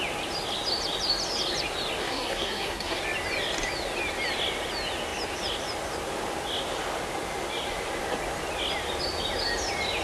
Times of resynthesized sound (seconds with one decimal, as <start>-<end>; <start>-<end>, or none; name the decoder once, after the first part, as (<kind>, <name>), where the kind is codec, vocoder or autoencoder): 2.0-3.0 (codec, SNAC)